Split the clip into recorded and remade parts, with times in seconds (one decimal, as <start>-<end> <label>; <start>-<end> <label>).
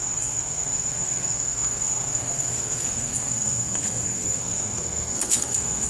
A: 0.0-5.9 remade